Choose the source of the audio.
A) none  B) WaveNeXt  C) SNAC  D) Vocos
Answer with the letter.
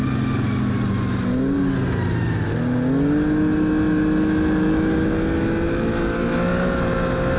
A